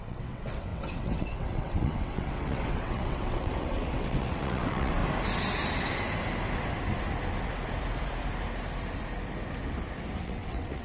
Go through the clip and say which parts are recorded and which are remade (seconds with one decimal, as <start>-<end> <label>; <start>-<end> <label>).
0.0-5.0 remade; 5.0-10.2 recorded; 10.2-10.8 remade